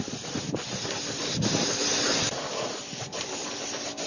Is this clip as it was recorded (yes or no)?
yes